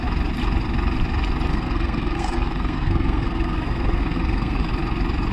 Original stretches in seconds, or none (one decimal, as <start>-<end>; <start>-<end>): 0.0-1.5; 4.7-5.3